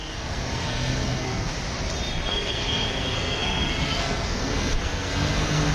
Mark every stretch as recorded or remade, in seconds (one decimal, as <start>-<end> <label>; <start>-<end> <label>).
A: 0.0-1.5 remade; 1.5-2.3 recorded; 2.3-5.7 remade